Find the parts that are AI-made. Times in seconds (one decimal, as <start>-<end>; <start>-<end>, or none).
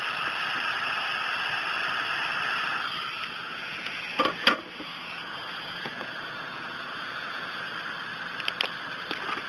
3.4-7.7